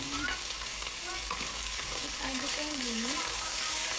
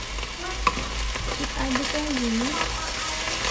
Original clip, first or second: second